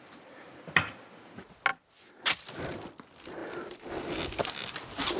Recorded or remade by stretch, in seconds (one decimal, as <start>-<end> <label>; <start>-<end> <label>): 0.0-1.7 recorded; 1.7-2.6 remade; 2.6-5.2 recorded